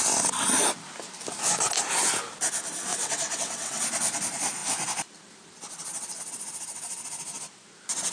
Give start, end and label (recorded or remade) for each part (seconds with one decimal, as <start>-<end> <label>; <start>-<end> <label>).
0.0-2.9 recorded; 2.9-3.8 remade; 3.8-8.1 recorded